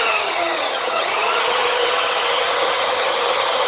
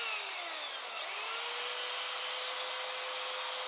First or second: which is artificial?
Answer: first